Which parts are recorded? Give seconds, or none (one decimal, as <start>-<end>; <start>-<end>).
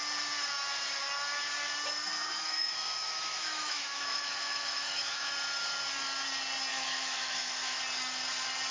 0.0-2.4; 5.3-6.7; 7.8-8.7